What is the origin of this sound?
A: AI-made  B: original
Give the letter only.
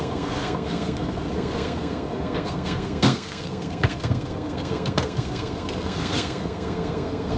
A